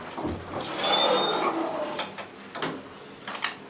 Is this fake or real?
real